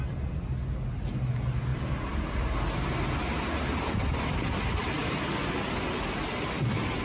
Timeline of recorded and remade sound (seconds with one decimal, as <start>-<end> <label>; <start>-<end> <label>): 0.0-7.0 recorded

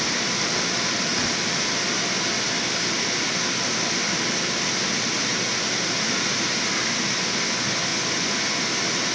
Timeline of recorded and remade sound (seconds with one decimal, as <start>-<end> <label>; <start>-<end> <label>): 0.0-7.9 recorded; 7.9-8.6 remade; 8.6-9.1 recorded

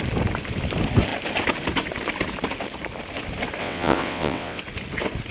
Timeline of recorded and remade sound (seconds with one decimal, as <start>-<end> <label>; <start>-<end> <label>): 0.0-3.6 recorded; 3.6-4.6 remade; 4.6-5.3 recorded

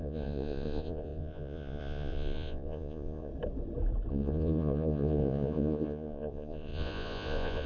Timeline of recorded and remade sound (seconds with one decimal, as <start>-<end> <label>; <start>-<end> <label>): 0.0-3.3 remade; 3.3-4.1 recorded; 4.1-7.7 remade

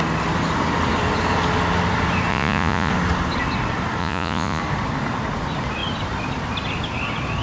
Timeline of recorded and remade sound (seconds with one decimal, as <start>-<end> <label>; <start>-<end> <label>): 0.0-2.3 recorded; 2.3-2.9 remade; 2.9-4.0 recorded; 4.0-4.6 remade; 4.6-7.4 recorded

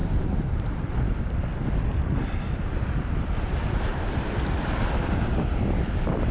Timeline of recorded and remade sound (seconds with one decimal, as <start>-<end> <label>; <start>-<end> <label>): 0.0-1.2 remade; 1.2-6.3 recorded

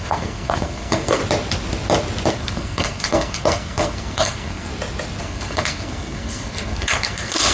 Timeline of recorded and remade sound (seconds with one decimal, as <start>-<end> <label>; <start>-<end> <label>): 0.0-1.2 remade; 1.2-2.3 recorded; 2.3-4.7 remade; 4.7-5.2 recorded; 5.2-7.5 remade

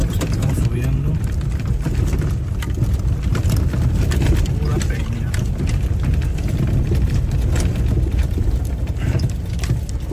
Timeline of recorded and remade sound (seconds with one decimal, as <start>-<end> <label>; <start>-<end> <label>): 0.0-2.9 remade; 2.9-8.2 recorded; 8.2-9.4 remade; 9.4-10.1 recorded